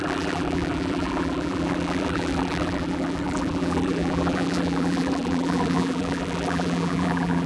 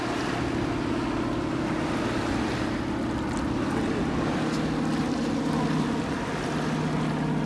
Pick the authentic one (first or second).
second